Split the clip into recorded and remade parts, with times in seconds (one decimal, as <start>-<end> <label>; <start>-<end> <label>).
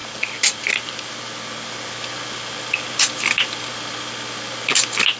0.0-0.7 remade; 0.7-5.2 recorded